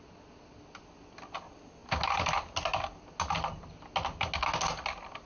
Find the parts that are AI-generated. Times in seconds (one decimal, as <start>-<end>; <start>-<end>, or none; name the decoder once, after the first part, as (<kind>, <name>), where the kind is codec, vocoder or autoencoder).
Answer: none